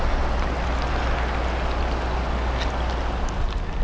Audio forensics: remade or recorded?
recorded